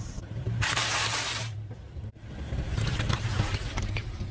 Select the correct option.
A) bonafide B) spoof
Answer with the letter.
B